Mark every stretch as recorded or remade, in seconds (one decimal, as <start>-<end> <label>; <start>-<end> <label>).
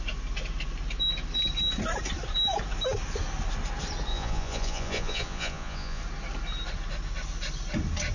0.0-4.1 recorded; 4.1-6.0 remade; 6.0-8.1 recorded